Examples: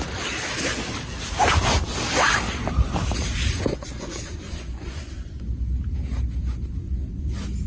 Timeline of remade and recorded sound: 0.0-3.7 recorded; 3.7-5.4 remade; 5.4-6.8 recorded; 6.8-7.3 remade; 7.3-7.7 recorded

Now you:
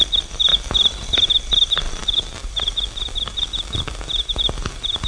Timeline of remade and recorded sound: 0.0-5.1 recorded

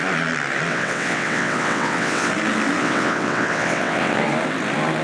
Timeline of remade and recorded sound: 0.0-0.7 recorded; 0.7-2.3 remade; 2.3-2.8 recorded; 2.8-4.2 remade; 4.2-5.0 recorded

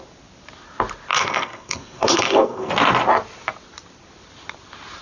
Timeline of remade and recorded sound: 0.0-1.1 recorded; 1.1-2.7 remade; 2.7-5.0 recorded

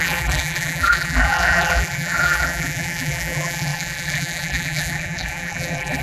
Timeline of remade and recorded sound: 0.0-6.0 remade

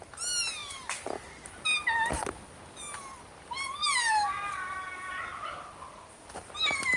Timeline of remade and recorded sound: 0.0-7.0 recorded

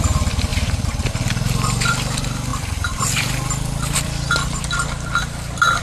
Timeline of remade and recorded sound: 0.0-0.5 recorded; 0.5-1.1 remade; 1.1-2.5 recorded; 2.5-4.6 remade; 4.6-5.8 recorded

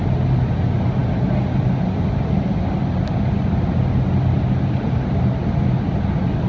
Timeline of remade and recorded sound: 0.0-6.5 recorded